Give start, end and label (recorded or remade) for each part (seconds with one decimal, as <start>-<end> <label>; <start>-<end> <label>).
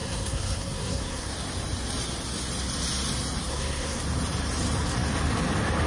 0.0-1.3 remade; 1.3-3.5 recorded; 3.5-4.0 remade; 4.0-5.9 recorded